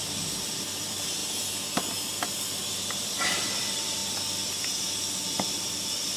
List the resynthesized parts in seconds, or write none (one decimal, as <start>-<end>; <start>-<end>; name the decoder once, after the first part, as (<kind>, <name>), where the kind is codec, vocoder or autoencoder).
0.0-1.2 (vocoder, BigVGAN v2); 2.7-4.0; 5.5-6.2